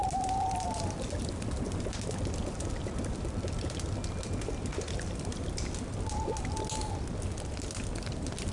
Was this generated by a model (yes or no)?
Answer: no